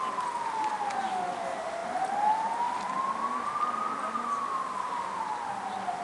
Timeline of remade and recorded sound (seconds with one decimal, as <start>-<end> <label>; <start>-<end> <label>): 0.0-6.0 recorded